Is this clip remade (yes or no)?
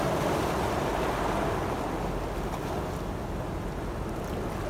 no